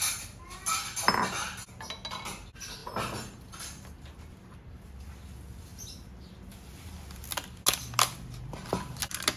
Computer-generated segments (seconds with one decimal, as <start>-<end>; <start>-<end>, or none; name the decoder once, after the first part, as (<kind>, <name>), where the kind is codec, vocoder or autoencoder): none